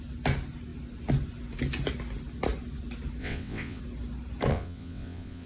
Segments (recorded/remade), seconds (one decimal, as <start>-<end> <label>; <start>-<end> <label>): 0.0-3.2 recorded; 3.2-3.8 remade; 3.8-4.5 recorded; 4.5-5.5 remade